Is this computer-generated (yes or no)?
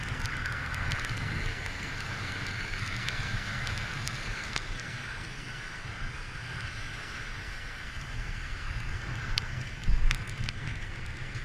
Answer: yes